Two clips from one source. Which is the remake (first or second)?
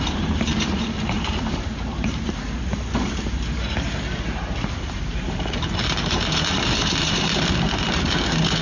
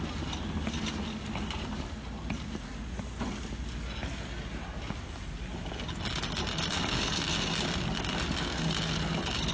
first